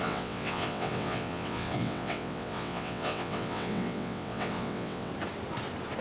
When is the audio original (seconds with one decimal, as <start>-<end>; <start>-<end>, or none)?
5.1-6.0